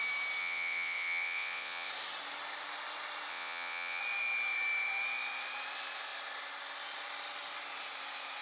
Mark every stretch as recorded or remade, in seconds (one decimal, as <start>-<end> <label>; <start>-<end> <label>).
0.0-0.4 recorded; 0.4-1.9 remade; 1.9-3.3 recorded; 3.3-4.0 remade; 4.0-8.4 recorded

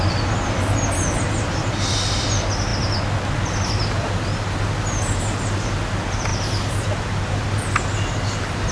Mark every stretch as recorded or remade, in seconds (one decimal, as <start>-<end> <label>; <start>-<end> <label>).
0.0-8.7 recorded

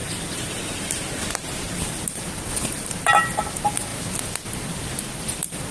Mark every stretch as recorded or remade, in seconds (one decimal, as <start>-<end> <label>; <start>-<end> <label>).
0.0-5.7 recorded

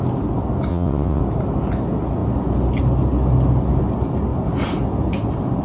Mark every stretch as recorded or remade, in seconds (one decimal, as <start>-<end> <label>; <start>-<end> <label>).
0.0-0.7 recorded; 0.7-1.2 remade; 1.2-5.6 recorded

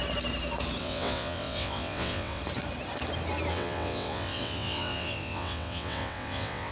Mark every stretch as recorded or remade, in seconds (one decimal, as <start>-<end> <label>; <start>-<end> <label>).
0.0-0.8 recorded; 0.8-2.4 remade; 2.4-3.5 recorded; 3.5-6.7 remade

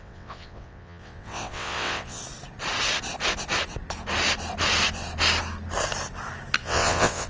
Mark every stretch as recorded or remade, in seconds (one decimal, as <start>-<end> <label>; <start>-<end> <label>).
0.0-2.2 remade; 2.2-6.6 recorded; 6.6-7.3 remade

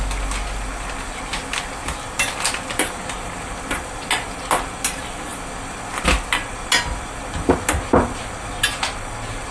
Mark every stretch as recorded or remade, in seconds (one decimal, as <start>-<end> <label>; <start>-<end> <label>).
0.0-9.5 recorded

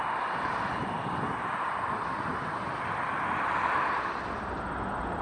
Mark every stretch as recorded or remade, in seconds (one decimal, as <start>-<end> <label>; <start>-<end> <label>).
0.0-5.2 recorded